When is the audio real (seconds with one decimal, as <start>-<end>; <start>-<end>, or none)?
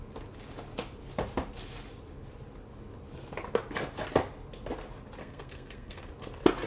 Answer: 0.0-5.2; 6.1-6.7